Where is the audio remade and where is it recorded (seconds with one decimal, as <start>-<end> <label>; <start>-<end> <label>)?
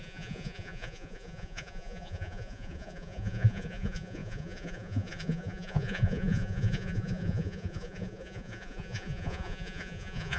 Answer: 0.0-10.4 remade